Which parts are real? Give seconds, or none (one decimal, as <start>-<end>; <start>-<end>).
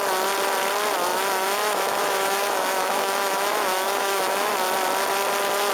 0.0-1.1; 4.5-5.7